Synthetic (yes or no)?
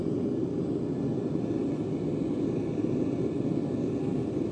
no